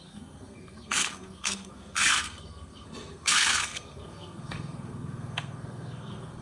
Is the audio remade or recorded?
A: remade